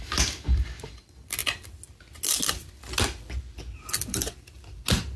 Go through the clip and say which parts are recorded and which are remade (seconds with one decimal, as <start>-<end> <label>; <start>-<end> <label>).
0.0-5.2 recorded